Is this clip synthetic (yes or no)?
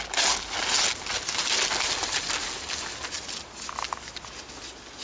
no